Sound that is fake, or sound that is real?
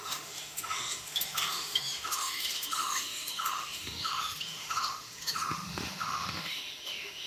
fake